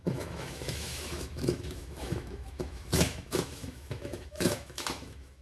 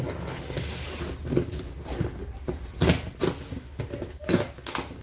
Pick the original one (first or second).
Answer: second